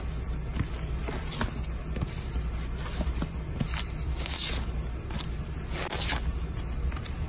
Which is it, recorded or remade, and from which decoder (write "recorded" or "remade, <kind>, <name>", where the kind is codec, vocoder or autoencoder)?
recorded